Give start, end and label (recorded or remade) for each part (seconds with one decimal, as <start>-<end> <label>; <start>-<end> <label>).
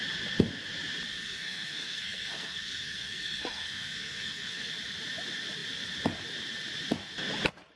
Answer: 0.0-1.1 recorded; 1.1-4.7 remade; 4.7-7.8 recorded